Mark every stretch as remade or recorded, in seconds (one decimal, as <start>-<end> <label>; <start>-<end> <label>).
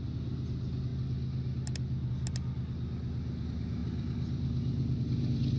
0.0-5.6 recorded